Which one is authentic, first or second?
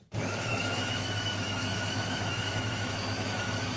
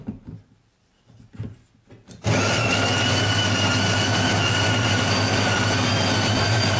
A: second